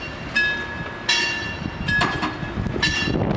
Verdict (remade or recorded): recorded